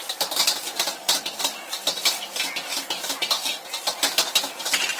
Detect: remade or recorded recorded